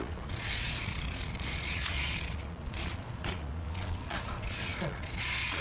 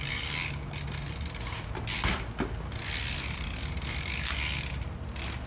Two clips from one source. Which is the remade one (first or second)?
first